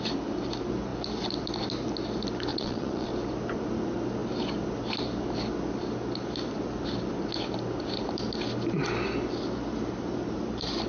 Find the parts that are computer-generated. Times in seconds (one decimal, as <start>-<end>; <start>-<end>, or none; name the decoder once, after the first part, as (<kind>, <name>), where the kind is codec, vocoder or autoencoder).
2.5-3.1 (vocoder, Vocos)